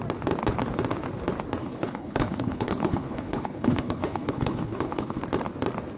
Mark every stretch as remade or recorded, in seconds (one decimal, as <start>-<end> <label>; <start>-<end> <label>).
0.0-1.6 recorded; 1.6-5.2 remade; 5.2-6.0 recorded